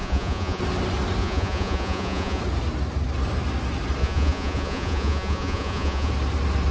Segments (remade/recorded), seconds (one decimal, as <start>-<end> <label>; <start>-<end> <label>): 0.0-0.6 remade; 0.6-1.2 recorded; 1.2-2.4 remade; 2.4-4.0 recorded; 4.0-6.1 remade; 6.1-6.7 recorded